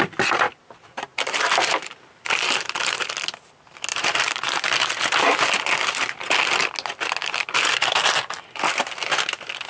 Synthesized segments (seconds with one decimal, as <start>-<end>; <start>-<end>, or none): 1.1-3.1; 3.9-5.5; 7.2-8.1